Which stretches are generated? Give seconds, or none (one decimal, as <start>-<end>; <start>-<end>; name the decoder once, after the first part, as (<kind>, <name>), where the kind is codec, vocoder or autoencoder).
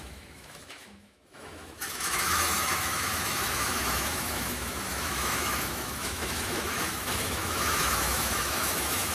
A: 0.0-9.1 (autoencoder, DAC-VAE)